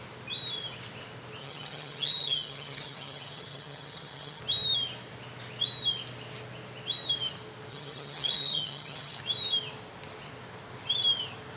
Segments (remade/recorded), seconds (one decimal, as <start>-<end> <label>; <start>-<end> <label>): 0.0-1.4 recorded; 1.4-4.4 remade; 4.4-7.7 recorded; 7.7-9.2 remade; 9.2-11.6 recorded